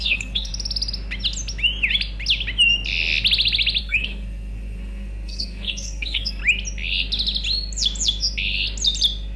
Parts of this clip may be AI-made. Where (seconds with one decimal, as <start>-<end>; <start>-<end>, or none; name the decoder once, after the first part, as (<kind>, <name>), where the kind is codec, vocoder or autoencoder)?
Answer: 0.0-0.5 (codec, SNAC); 3.8-6.4